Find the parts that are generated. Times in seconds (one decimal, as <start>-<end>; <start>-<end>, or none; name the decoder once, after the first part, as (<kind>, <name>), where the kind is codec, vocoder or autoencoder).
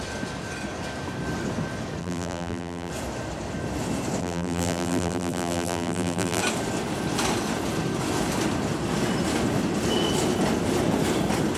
2.0-2.9 (vocoder, BigVGAN v2); 4.2-6.4